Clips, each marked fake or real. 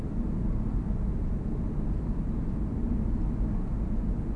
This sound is real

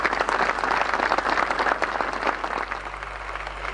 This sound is real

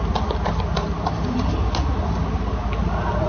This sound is real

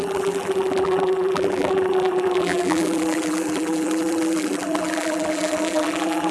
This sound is fake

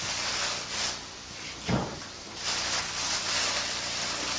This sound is real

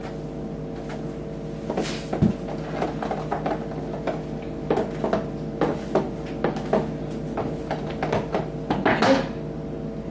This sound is real